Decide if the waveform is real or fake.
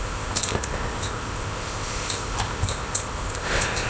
fake